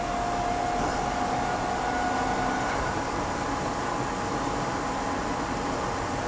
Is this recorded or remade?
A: recorded